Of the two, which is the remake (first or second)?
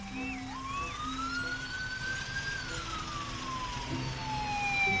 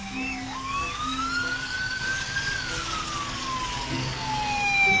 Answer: second